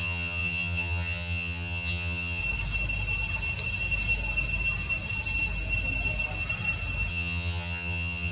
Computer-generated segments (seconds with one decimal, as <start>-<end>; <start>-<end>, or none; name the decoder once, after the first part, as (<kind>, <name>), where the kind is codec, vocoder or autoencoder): 0.0-2.4 (vocoder, HiFi-GAN); 7.1-8.3